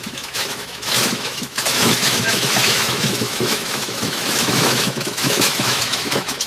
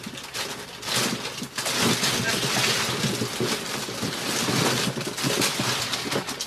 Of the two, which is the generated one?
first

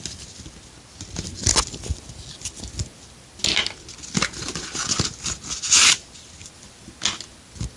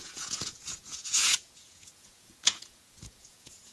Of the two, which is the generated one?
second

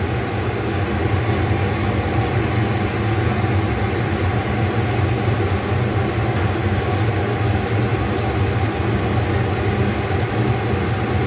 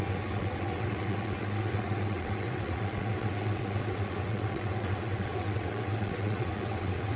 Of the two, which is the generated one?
second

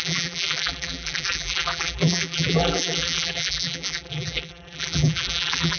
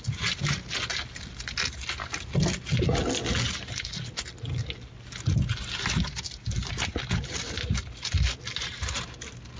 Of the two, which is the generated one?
first